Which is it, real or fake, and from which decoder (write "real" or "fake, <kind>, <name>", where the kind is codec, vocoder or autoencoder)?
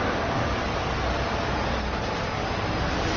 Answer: real